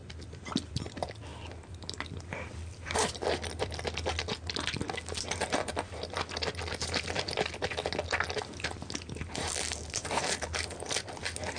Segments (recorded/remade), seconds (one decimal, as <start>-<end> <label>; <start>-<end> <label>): 0.0-0.8 remade; 0.8-1.3 recorded; 1.3-4.2 remade; 4.2-11.6 recorded